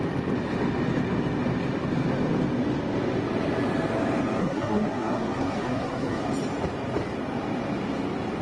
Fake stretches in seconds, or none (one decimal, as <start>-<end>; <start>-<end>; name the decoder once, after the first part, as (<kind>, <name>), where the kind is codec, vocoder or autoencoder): 4.4-6.2 (codec, SNAC)